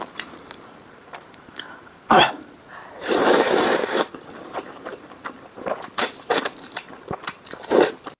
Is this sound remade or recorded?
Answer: remade